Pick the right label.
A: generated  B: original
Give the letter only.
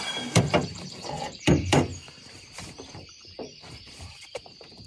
A